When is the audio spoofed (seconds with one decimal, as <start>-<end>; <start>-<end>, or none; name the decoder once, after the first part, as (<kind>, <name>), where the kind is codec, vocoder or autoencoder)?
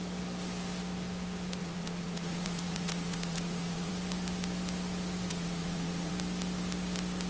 1.6-3.9 (vocoder, Vocos); 5.3-6.1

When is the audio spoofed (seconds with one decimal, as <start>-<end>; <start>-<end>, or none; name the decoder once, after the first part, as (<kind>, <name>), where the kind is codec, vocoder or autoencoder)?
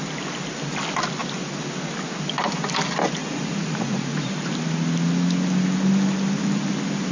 3.2-4.5 (vocoder, Vocos)